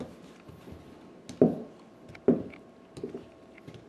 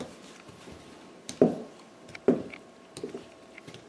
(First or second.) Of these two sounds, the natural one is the first